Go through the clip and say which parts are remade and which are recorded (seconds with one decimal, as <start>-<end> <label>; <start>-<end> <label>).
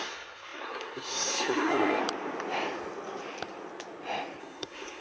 0.0-2.0 remade; 2.0-4.4 recorded; 4.4-5.0 remade